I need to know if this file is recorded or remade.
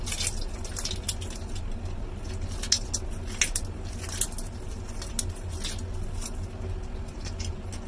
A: recorded